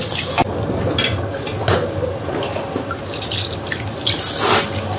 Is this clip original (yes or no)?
yes